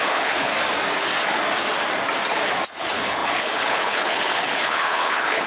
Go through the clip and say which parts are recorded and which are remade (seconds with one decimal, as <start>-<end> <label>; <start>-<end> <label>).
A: 0.0-0.5 remade; 0.5-2.8 recorded; 2.8-5.5 remade